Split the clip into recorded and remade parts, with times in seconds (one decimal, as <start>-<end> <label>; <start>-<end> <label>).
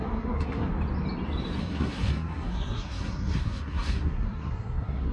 0.0-0.7 remade; 0.7-1.6 recorded; 1.6-5.1 remade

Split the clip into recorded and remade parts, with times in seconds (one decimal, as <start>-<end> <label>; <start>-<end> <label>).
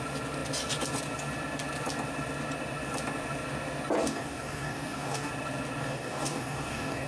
0.0-4.0 recorded; 4.0-5.3 remade; 5.3-5.8 recorded; 5.8-7.1 remade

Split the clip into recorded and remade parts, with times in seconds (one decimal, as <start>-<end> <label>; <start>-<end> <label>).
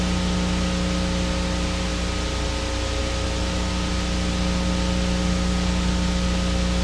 0.0-6.8 recorded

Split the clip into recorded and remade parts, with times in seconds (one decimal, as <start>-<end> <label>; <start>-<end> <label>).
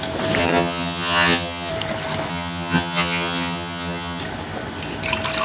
0.0-0.4 recorded; 0.4-1.7 remade; 1.7-2.3 recorded; 2.3-4.2 remade; 4.2-5.4 recorded